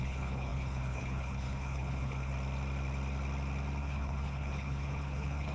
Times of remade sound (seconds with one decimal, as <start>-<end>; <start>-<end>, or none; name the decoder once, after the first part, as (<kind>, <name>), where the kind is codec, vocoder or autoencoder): 0.0-2.3 (codec, HILCodec); 3.8-5.5